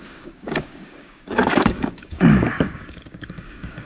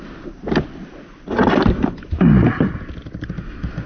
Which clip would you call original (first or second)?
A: second